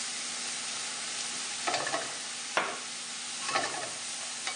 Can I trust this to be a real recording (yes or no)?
yes